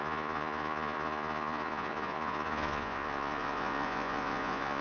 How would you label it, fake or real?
fake